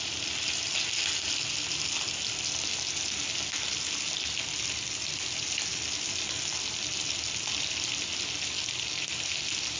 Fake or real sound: real